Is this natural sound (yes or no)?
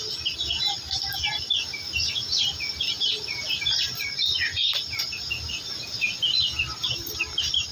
yes